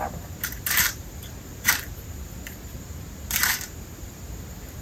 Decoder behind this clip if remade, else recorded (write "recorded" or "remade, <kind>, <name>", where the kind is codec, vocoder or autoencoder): remade, vocoder, BigVGAN v2